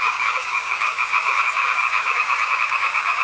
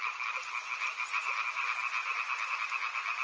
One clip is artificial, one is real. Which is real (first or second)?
second